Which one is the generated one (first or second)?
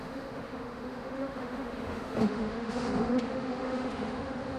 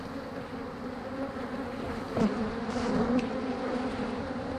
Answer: first